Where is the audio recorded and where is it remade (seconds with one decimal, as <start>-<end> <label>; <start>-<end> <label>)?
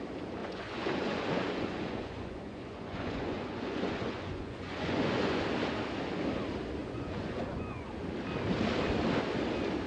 0.0-0.4 recorded; 0.4-5.4 remade; 5.4-6.8 recorded; 6.8-7.9 remade; 7.9-9.9 recorded